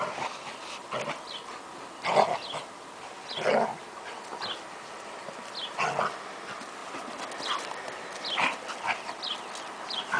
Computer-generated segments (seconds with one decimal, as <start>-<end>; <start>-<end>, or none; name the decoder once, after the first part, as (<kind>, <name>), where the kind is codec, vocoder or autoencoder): none